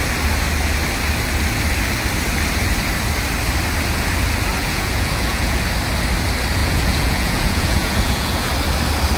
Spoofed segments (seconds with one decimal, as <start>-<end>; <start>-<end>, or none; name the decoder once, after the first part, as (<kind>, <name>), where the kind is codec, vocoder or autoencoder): 4.6-5.6 (vocoder, Vocos); 6.6-8.5